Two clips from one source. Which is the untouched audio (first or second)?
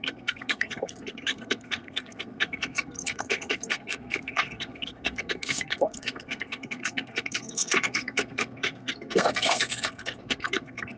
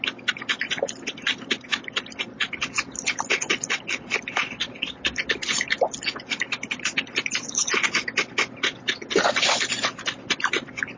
second